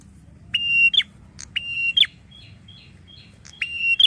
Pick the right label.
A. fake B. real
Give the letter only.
B